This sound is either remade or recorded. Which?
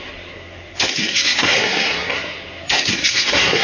remade